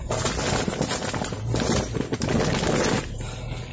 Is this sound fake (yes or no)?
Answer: no